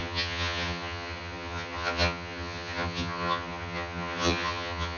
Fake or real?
fake